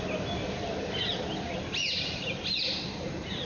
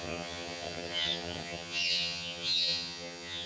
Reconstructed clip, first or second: second